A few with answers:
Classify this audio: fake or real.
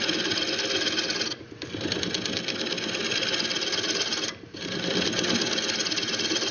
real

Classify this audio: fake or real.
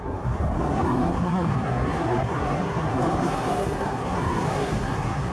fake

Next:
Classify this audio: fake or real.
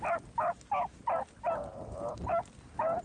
real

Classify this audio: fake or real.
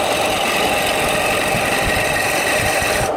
real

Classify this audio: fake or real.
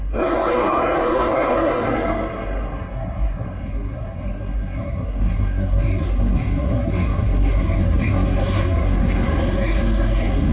fake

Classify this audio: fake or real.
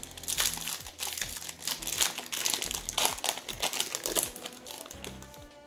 real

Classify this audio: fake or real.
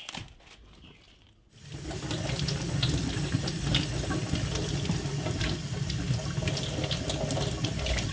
real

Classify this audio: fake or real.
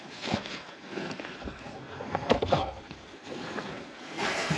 fake